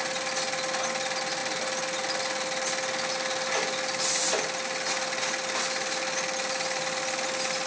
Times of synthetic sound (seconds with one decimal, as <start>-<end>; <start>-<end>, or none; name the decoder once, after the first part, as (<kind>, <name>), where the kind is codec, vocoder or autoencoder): none